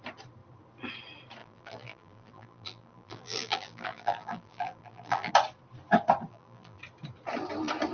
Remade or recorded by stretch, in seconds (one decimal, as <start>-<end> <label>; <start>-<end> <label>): 0.0-1.4 recorded; 1.4-5.3 remade; 5.3-6.3 recorded; 6.3-6.8 remade; 6.8-7.9 recorded